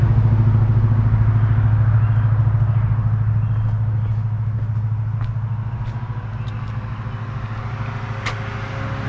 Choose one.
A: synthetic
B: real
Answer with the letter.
B